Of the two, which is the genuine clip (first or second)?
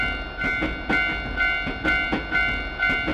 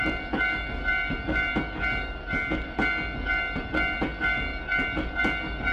first